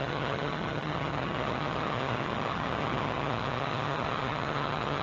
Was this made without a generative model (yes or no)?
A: no